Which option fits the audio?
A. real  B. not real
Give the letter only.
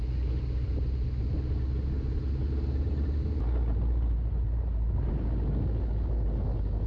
A